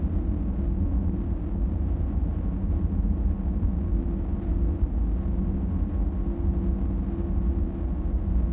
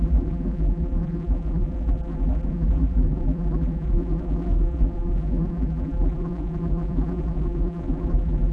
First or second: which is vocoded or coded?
second